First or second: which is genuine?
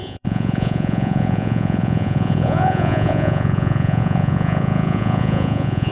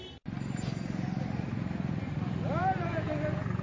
second